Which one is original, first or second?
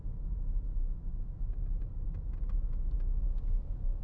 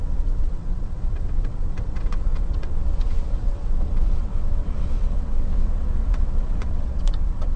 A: first